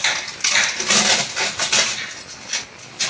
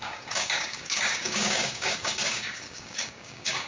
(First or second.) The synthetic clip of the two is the second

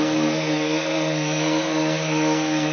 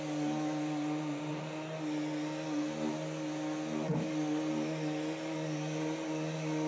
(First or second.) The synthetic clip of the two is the first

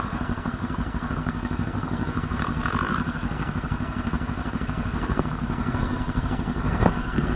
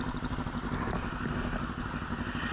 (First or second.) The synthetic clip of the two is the first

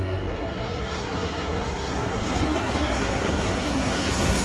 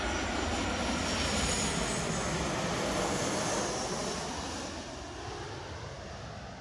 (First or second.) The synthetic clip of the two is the first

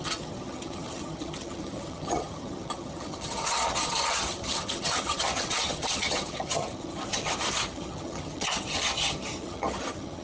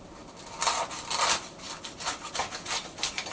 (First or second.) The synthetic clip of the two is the first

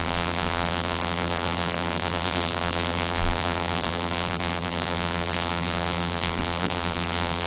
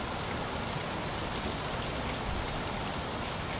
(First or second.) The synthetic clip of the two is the first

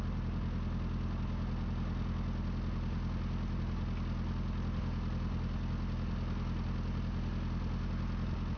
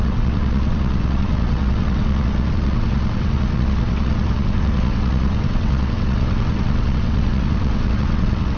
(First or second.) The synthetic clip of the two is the second